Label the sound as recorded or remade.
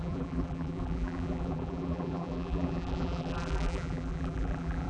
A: remade